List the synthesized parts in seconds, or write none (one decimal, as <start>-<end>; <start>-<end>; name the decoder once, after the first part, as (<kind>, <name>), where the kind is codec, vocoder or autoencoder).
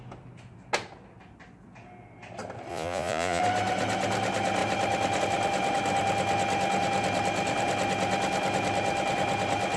2.7-3.4 (vocoder, Vocos)